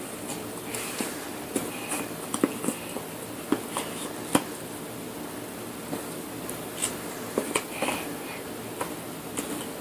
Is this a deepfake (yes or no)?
no